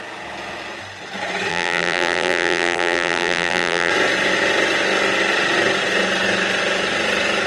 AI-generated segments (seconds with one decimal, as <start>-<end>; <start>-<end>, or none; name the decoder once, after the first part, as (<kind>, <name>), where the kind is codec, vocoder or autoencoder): 1.5-3.9 (vocoder, BigVGAN v2)